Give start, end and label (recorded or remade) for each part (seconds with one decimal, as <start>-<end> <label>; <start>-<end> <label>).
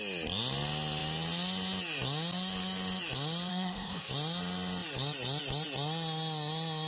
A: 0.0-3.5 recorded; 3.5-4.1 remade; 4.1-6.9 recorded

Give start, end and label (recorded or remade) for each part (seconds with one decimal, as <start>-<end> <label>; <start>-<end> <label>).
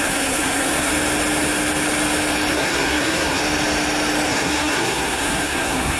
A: 0.0-0.9 remade; 0.9-2.5 recorded; 2.5-3.4 remade; 3.4-4.3 recorded; 4.3-6.0 remade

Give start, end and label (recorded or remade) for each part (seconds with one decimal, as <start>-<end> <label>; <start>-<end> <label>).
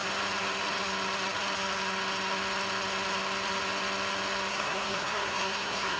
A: 0.0-4.5 recorded; 4.5-6.0 remade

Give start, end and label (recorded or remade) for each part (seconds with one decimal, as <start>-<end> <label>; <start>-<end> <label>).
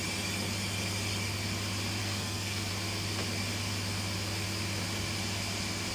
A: 0.0-2.0 recorded; 2.0-2.7 remade; 2.7-5.9 recorded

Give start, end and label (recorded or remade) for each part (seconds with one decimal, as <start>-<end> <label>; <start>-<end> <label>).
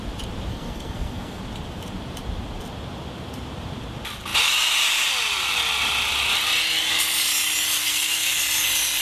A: 0.0-0.5 recorded; 0.5-1.4 remade; 1.4-7.8 recorded; 7.8-8.4 remade; 8.4-9.0 recorded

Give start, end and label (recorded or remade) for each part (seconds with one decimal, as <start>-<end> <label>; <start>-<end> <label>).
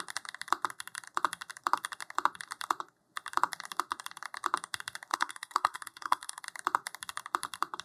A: 0.0-5.1 recorded; 5.1-6.4 remade; 6.4-7.8 recorded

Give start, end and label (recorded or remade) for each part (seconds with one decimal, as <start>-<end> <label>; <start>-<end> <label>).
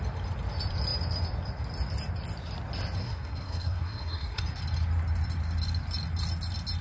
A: 0.0-3.0 recorded; 3.0-4.4 remade; 4.4-6.8 recorded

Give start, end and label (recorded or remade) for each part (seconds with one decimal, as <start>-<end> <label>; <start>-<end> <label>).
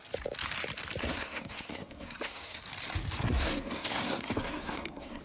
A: 0.0-1.0 recorded; 1.0-2.6 remade; 2.6-3.2 recorded; 3.2-5.2 remade